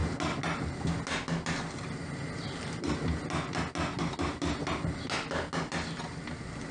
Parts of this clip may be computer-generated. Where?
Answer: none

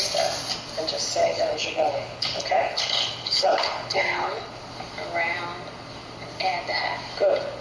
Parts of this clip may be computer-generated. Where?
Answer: 1.2-4.6 (codec, HILCodec)

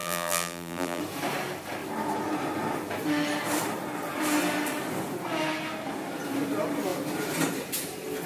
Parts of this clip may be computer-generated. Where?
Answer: 0.0-1.0 (vocoder, BigVGAN v2)

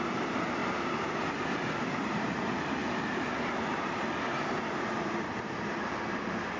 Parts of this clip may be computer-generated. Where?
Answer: none

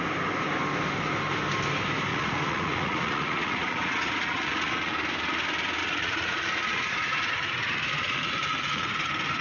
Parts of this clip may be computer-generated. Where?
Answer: 2.1-4.9 (vocoder, Vocos); 5.8-8.9

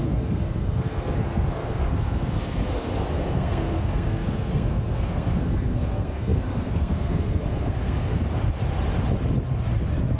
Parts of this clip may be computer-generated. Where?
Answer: 0.0-8.2 (codec, SNAC)

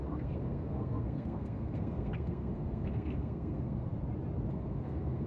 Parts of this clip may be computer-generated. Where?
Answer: 0.0-3.9 (codec, SNAC); 4.5-5.3